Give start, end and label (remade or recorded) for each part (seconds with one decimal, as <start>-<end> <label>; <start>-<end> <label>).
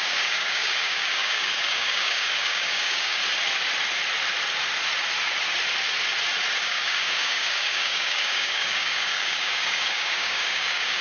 0.0-3.2 remade; 3.2-6.6 recorded; 6.6-11.0 remade